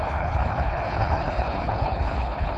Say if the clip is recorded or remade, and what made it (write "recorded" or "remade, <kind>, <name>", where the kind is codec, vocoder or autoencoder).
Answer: remade, codec, HILCodec